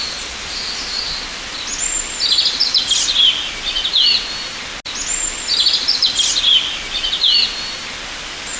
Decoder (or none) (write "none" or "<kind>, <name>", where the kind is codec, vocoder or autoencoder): none